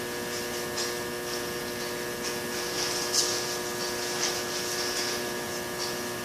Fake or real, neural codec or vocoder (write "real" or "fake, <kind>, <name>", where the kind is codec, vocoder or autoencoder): real